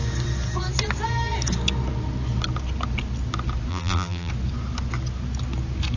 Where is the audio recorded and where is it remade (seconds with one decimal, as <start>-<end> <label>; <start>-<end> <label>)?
0.0-3.7 recorded; 3.7-4.3 remade; 4.3-6.0 recorded

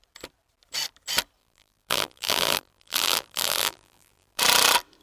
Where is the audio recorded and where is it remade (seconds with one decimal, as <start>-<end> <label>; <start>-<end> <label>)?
0.0-1.4 recorded; 1.4-4.4 remade; 4.4-5.0 recorded

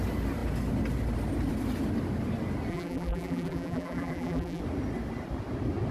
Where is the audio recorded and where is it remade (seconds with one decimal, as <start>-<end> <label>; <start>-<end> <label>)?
0.0-2.7 recorded; 2.7-4.6 remade; 4.6-5.9 recorded

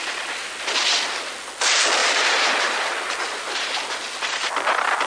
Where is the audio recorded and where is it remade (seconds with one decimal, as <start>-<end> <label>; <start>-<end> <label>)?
0.0-2.0 recorded; 2.0-2.9 remade; 2.9-5.1 recorded

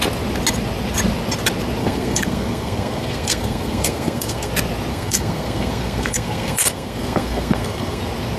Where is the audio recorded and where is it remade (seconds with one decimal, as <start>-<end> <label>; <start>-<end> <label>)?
0.0-1.8 recorded; 1.8-4.5 remade; 4.5-4.9 recorded; 4.9-8.0 remade; 8.0-8.4 recorded